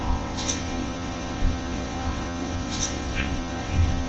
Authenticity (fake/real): fake